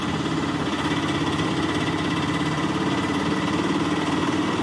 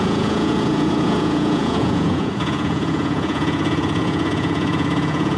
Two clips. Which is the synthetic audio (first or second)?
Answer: second